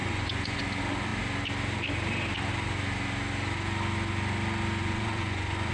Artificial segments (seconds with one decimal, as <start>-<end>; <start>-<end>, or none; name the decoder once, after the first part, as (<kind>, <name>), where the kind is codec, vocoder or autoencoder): 0.0-0.6 (vocoder, Vocos); 4.8-5.7